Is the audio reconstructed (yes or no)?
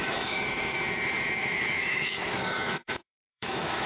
yes